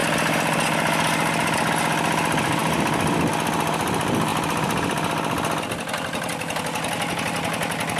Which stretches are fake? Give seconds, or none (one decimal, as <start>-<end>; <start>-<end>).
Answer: none